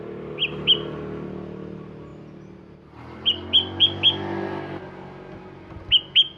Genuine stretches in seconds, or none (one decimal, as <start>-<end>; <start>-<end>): 0.0-6.4

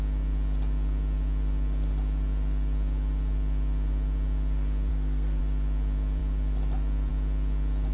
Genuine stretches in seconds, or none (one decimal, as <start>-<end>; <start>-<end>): 0.0-4.9; 5.4-7.9

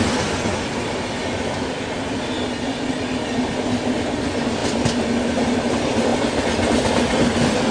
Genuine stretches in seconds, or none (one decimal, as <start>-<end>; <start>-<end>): 0.0-7.7

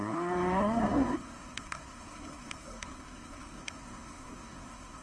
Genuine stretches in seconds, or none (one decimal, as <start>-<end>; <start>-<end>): none

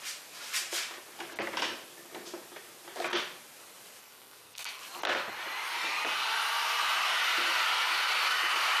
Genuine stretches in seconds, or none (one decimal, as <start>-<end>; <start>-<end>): 0.0-4.0; 4.8-8.8